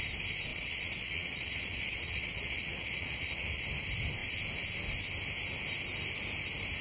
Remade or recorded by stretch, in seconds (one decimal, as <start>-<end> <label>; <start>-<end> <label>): 0.0-0.5 recorded; 0.5-3.6 remade; 3.6-6.8 recorded